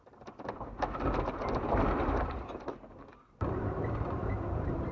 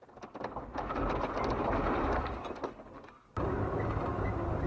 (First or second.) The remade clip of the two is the first